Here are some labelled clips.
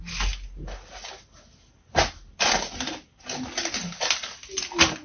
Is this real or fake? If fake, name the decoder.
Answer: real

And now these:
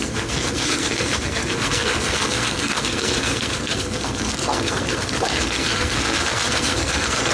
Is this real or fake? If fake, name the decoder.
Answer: fake, codec, SNAC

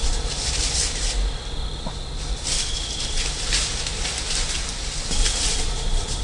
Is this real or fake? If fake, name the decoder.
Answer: real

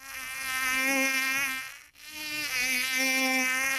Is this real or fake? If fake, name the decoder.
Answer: fake, codec, SNAC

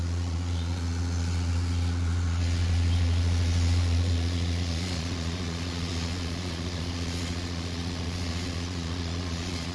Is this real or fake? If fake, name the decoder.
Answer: fake, vocoder, Vocos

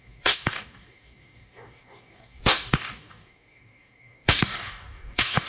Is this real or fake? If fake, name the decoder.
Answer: fake, codec, DAC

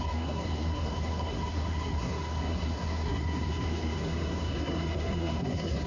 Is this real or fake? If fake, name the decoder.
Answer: fake, codec, SNAC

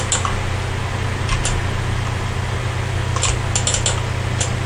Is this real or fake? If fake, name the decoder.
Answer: real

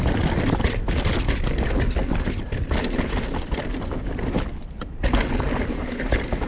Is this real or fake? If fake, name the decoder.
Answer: real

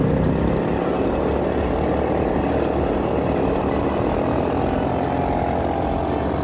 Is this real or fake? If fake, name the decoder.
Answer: real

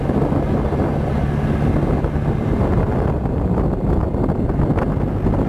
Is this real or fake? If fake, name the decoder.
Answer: real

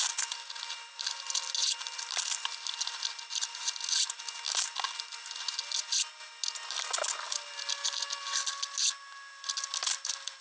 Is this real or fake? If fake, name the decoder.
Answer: real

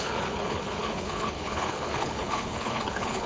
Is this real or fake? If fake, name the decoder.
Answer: fake, codec, HILCodec